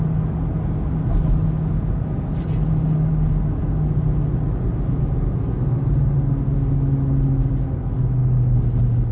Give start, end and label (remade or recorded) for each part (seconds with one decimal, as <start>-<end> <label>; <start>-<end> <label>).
0.0-9.1 recorded

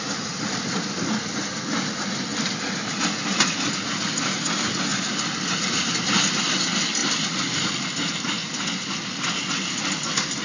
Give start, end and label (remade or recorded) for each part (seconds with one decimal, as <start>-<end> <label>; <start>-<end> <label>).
0.0-10.4 recorded